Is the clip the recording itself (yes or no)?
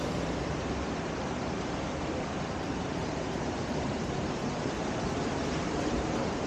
no